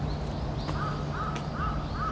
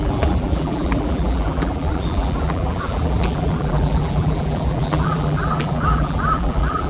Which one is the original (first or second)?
first